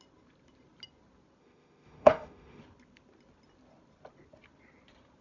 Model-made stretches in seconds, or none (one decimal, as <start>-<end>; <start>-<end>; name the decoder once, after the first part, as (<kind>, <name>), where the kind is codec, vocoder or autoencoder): 1.4-2.6 (autoencoder, DAC-VAE)